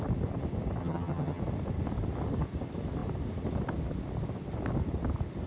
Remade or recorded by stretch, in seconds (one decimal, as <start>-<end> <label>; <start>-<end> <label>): 0.0-0.8 recorded; 0.8-1.4 remade; 1.4-5.5 recorded